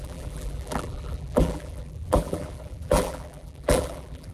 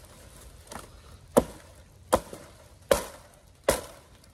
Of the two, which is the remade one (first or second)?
first